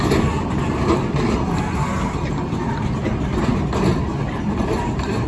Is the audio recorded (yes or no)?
yes